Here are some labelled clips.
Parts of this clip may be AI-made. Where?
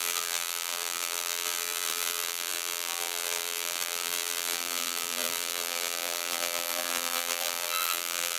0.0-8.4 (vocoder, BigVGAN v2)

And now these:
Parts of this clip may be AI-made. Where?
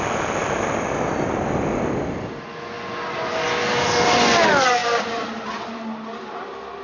none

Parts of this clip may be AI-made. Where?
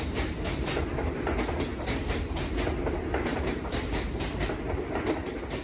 3.3-4.8 (vocoder, BigVGAN v2)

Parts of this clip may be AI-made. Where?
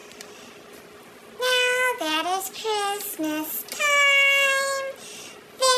none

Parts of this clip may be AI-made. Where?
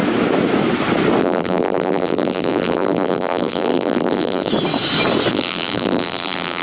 1.2-4.5 (vocoder, BigVGAN v2); 5.3-6.6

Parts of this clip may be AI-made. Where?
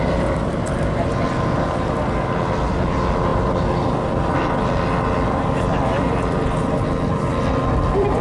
none